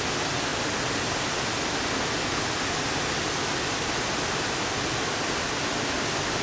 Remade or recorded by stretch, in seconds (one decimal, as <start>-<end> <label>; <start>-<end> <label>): 0.0-6.4 recorded